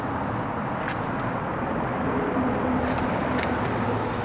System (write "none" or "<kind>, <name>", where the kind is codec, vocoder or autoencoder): vocoder, BigVGAN v2